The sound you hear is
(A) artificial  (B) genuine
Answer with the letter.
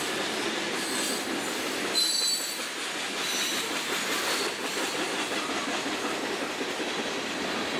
B